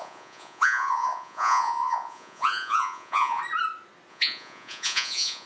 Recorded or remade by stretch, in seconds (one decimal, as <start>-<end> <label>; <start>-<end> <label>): 0.0-3.4 remade; 3.4-4.1 recorded; 4.1-5.5 remade